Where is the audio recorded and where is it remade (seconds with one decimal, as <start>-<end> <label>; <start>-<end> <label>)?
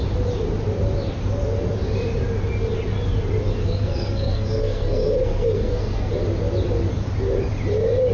0.0-3.6 recorded; 3.6-6.1 remade; 6.1-8.1 recorded